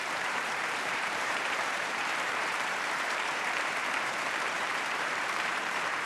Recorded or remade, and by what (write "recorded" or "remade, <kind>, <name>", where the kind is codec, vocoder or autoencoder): remade, vocoder, BigVGAN v2